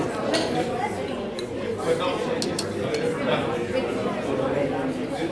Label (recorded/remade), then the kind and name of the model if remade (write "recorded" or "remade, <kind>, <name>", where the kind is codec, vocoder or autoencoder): recorded